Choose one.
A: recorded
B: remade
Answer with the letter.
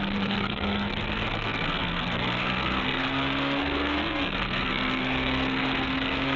B